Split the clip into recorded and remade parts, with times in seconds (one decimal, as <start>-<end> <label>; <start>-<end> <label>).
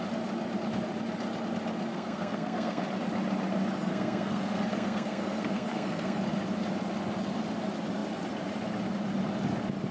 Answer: 0.0-1.9 recorded; 1.9-2.8 remade; 2.8-3.8 recorded; 3.8-6.2 remade; 6.2-9.9 recorded